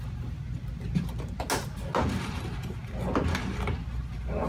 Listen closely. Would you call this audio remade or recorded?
recorded